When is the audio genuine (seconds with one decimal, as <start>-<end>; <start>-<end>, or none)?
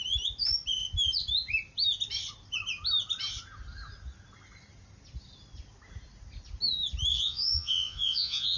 0.0-7.1